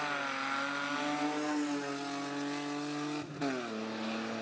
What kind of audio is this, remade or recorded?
recorded